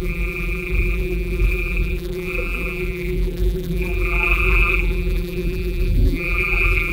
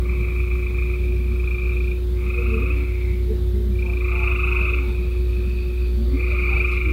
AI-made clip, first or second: first